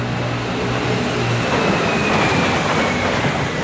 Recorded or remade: recorded